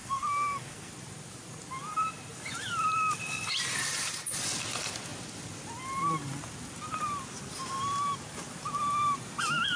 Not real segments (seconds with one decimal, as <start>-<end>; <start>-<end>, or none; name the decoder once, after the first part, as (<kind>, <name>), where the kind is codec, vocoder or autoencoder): 0.0-0.9 (codec, SNAC)